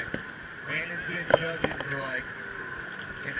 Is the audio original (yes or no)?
yes